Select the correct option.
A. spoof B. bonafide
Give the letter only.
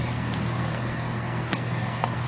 A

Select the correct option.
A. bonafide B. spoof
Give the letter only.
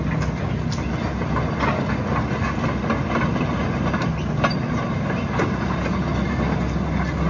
A